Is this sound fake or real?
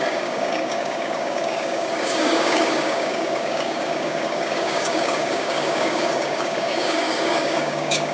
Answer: fake